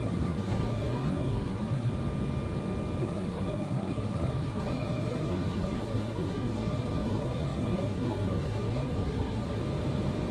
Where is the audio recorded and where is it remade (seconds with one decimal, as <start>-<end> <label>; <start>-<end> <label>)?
0.0-1.9 remade; 1.9-3.0 recorded; 3.0-9.6 remade; 9.6-10.3 recorded